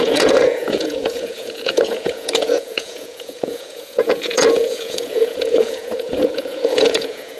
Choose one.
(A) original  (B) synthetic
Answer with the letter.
B